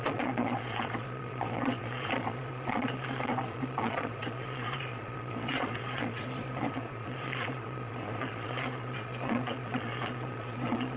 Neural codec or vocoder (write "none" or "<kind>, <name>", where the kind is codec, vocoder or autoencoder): vocoder, Vocos